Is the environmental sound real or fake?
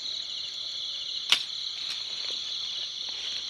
real